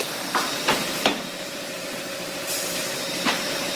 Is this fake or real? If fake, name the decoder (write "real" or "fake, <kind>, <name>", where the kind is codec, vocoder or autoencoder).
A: fake, vocoder, BigVGAN v2